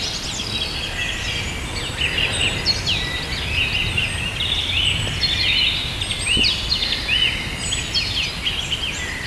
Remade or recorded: recorded